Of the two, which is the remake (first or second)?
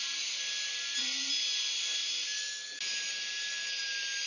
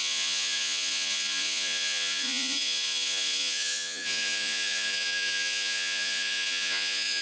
second